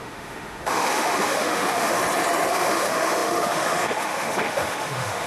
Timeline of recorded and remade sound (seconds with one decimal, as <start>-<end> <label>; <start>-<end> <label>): 0.0-2.0 remade; 2.0-2.5 recorded; 2.5-5.3 remade